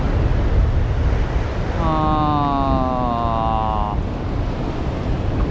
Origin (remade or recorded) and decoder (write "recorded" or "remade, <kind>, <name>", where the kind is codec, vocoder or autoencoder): recorded